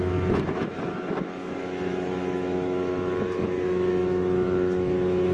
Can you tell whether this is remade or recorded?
remade